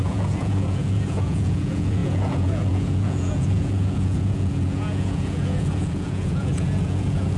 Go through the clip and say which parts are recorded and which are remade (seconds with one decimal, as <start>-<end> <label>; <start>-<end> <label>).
0.0-7.4 remade